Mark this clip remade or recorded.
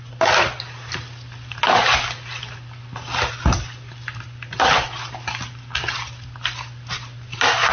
recorded